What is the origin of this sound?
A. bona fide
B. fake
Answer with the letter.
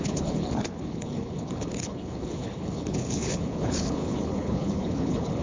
B